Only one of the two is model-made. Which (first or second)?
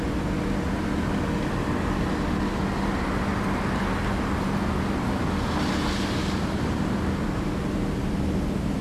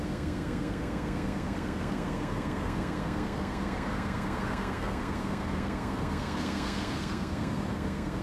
second